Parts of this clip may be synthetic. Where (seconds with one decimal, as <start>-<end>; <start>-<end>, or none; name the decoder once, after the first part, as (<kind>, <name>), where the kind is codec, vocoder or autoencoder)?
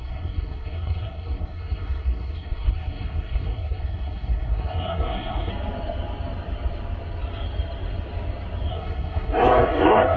0.0-5.5 (codec, SNAC); 8.7-10.2